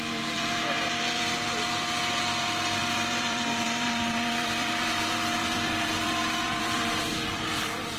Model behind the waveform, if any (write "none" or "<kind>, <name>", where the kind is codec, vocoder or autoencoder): vocoder, BigVGAN v2